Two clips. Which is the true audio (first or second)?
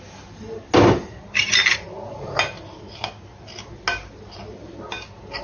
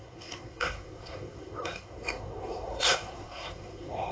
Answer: first